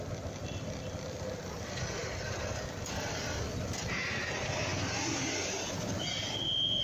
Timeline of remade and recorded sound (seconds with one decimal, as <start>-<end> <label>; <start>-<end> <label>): 0.0-6.8 recorded